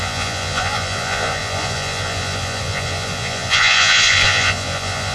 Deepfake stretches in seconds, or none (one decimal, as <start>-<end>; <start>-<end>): 0.0-5.1